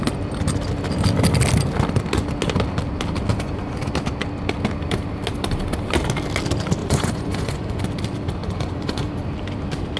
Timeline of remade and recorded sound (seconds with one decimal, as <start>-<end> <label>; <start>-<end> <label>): 0.0-3.3 recorded; 3.3-3.9 remade; 3.9-6.8 recorded; 6.8-7.8 remade; 7.8-8.4 recorded; 8.4-9.1 remade; 9.1-10.0 recorded